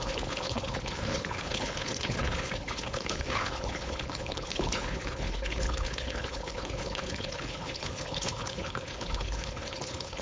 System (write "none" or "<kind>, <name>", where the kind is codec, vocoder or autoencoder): codec, HILCodec